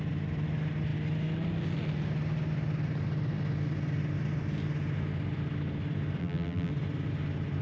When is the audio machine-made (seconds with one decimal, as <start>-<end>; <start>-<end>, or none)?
6.2-6.7